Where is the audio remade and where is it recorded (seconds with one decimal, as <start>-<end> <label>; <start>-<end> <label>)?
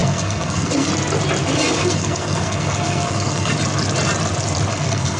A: 0.0-0.9 remade; 0.9-1.8 recorded; 1.8-3.5 remade; 3.5-4.7 recorded; 4.7-5.2 remade